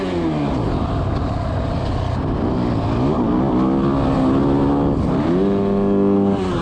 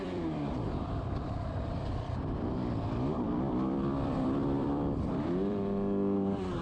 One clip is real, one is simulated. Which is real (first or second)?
first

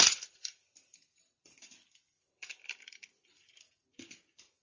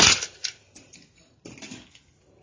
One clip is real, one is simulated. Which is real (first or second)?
second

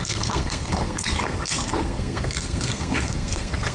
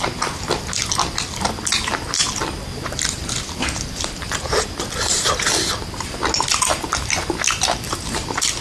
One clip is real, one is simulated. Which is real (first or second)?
second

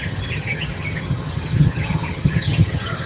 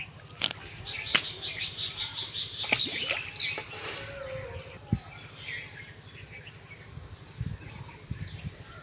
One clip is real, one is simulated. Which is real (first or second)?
second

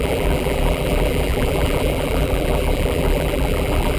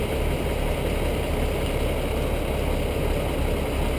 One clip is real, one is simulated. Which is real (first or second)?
second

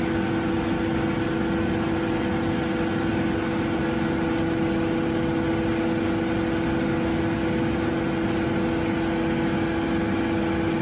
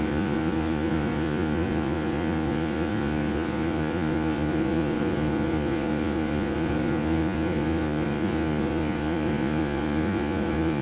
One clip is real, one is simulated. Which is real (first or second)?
first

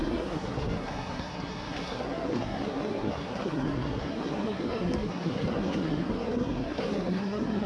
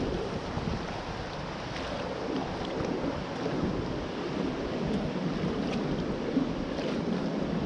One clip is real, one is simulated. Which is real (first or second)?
second